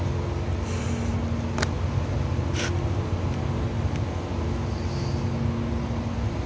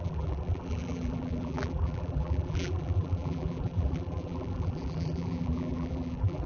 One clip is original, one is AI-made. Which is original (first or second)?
first